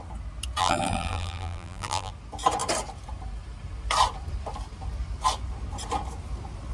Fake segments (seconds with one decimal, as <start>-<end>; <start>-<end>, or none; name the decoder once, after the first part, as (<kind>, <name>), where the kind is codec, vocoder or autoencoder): 0.6-2.1 (vocoder, BigVGAN v2)